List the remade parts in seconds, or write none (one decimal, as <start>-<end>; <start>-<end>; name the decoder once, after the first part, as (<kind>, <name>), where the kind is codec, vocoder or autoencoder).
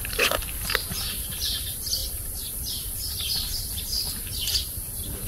0.0-5.3 (vocoder, BigVGAN v2)